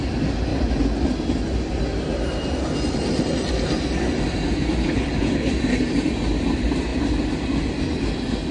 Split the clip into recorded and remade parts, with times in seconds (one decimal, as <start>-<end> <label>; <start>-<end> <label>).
0.0-4.8 recorded; 4.8-5.5 remade; 5.5-8.5 recorded